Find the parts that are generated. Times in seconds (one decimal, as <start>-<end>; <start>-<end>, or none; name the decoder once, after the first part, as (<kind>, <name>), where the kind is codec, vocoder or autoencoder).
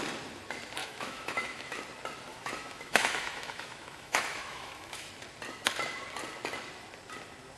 0.8-1.8 (autoencoder, DAC-VAE); 2.3-5.1